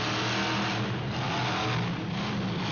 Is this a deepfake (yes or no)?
no